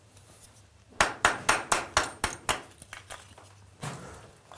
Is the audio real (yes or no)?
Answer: yes